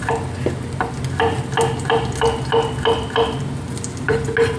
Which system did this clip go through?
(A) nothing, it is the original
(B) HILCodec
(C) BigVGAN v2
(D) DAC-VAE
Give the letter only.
A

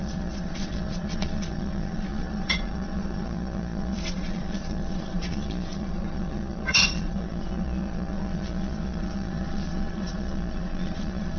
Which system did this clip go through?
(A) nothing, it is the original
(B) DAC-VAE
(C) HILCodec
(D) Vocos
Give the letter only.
D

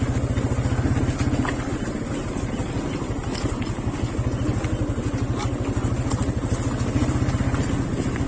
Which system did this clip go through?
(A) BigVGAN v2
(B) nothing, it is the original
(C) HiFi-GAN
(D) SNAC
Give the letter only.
B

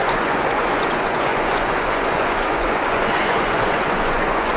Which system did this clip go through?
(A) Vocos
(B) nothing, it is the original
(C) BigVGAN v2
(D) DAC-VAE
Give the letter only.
A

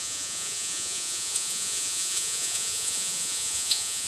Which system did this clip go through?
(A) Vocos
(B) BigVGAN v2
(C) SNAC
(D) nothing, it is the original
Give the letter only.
A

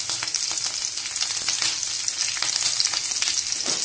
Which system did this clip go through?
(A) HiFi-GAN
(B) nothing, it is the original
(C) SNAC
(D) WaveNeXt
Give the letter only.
B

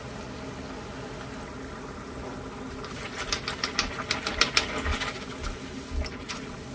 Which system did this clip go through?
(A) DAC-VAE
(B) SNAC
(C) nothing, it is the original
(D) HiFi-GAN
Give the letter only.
C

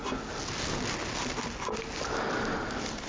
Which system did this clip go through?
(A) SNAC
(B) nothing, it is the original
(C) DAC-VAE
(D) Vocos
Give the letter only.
B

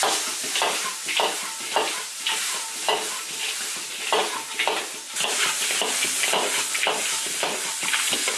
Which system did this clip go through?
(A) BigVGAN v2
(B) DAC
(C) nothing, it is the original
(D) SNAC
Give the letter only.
C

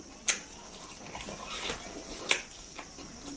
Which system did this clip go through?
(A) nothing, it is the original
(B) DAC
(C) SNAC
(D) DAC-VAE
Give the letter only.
A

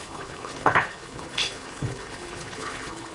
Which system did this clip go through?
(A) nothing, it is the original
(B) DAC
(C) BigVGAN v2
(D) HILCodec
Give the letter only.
D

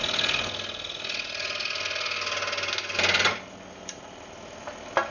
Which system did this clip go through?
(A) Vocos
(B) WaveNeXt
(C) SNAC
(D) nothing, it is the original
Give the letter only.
D